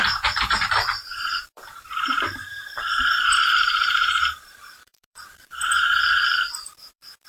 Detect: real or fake fake